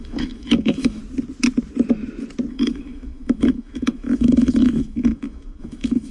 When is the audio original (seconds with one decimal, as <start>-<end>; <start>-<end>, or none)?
1.0-2.5